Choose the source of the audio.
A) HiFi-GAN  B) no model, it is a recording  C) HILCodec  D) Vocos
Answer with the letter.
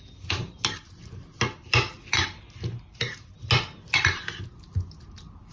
B